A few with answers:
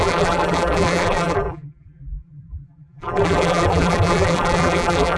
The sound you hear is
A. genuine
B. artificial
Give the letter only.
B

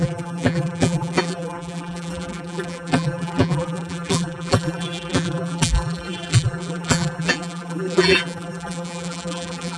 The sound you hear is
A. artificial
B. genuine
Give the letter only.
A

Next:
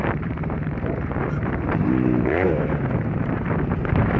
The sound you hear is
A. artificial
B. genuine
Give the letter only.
A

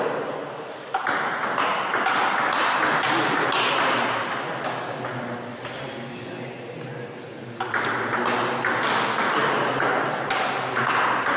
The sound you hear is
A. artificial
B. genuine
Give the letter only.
B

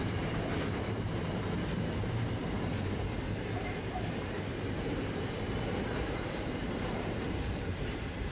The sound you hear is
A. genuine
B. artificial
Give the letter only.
B